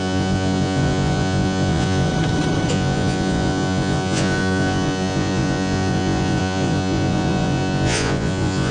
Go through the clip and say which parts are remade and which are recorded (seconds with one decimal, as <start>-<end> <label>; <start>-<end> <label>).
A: 0.0-2.1 remade; 2.1-2.7 recorded; 2.7-8.7 remade